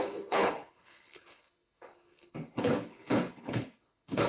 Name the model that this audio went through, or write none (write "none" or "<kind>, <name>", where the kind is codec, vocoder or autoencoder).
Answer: codec, HILCodec